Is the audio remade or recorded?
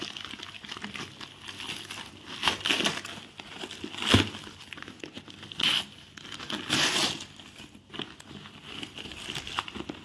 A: recorded